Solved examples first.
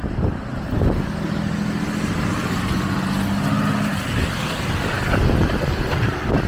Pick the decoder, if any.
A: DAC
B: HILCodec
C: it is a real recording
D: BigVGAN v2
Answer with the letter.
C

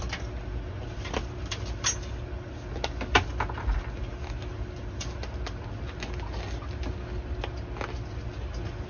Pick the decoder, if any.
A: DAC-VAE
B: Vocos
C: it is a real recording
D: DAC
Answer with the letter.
C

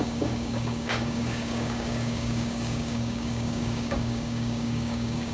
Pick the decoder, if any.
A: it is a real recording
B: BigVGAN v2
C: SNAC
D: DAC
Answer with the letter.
D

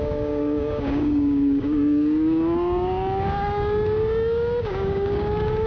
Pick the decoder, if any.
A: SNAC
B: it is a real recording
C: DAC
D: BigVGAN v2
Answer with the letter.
C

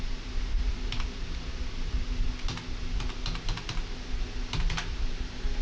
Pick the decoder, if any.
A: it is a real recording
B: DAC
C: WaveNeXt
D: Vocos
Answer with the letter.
A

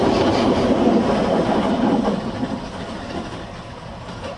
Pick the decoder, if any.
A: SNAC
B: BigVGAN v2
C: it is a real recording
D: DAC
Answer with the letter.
C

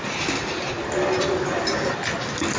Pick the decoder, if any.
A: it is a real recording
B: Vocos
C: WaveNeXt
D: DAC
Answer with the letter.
A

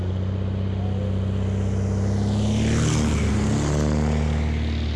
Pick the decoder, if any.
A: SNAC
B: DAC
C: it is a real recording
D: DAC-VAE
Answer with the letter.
C